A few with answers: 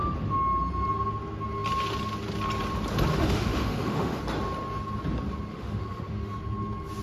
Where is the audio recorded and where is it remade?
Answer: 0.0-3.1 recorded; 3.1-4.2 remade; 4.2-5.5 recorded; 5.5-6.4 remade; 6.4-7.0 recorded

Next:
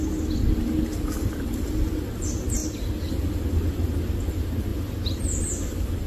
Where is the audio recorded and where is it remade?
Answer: 0.0-6.1 recorded

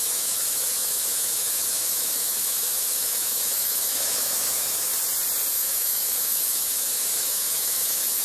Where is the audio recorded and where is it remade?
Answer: 0.0-4.9 remade; 4.9-5.5 recorded; 5.5-8.2 remade